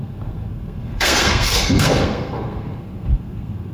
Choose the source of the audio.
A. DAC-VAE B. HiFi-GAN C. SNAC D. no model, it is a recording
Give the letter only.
C